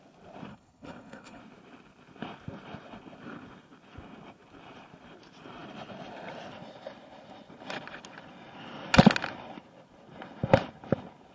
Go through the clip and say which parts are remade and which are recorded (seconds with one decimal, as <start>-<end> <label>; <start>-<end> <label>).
0.0-0.5 recorded; 0.5-1.4 remade; 1.4-11.3 recorded